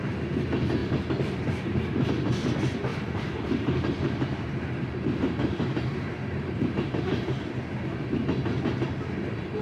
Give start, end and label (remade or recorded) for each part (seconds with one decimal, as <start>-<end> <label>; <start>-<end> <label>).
0.0-2.9 recorded; 2.9-7.0 remade; 7.0-9.6 recorded